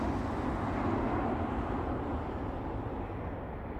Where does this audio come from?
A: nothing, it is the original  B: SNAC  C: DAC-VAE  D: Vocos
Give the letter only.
A